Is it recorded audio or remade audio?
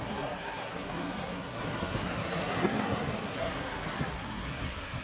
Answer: remade